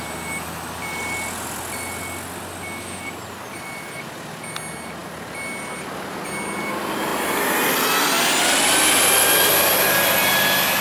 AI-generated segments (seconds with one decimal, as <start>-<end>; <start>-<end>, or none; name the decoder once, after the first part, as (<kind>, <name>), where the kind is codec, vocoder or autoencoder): none